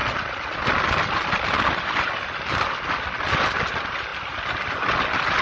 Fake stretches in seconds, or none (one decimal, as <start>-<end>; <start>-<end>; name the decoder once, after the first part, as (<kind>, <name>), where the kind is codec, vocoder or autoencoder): none